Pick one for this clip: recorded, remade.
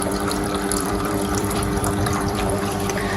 remade